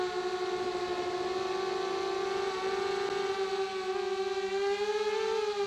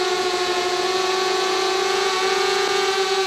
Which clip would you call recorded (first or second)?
first